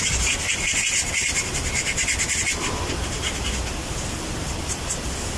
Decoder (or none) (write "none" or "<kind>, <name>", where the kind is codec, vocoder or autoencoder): none